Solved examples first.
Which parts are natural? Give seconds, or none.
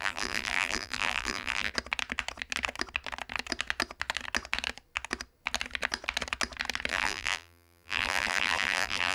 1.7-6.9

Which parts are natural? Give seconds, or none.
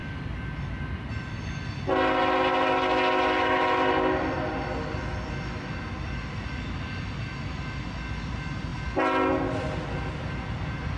0.0-11.0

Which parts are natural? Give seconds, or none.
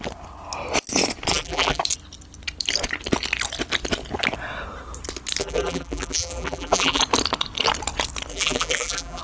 0.0-1.3; 1.8-5.4; 7.0-8.3